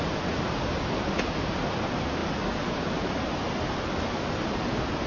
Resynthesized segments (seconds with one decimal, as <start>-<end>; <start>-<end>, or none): none